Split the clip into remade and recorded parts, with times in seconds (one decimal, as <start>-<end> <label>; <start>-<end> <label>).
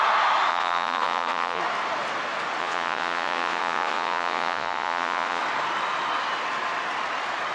0.0-0.5 recorded; 0.5-1.6 remade; 1.6-2.6 recorded; 2.6-5.4 remade; 5.4-7.5 recorded